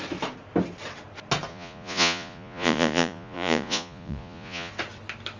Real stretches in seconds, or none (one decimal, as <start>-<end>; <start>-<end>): 0.0-1.5; 4.7-5.4